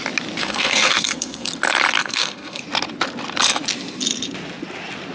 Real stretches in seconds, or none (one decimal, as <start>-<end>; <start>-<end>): 0.0-0.4; 1.5-2.0; 2.6-5.1